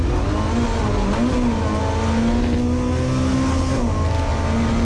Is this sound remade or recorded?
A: recorded